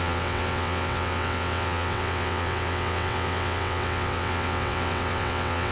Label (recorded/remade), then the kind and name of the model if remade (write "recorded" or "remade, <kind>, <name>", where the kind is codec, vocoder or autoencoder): remade, vocoder, WaveNeXt